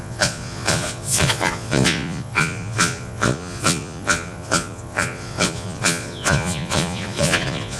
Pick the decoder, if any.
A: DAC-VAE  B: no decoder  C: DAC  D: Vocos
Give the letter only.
D